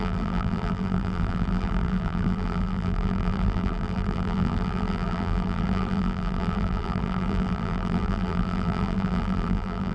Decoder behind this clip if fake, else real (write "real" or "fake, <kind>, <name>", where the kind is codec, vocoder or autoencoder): fake, vocoder, BigVGAN v2